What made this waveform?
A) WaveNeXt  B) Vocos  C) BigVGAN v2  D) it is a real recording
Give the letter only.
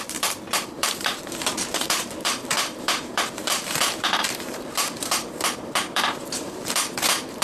C